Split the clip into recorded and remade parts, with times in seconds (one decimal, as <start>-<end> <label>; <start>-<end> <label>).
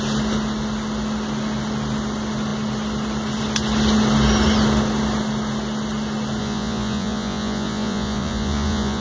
0.0-6.4 recorded; 6.4-9.0 remade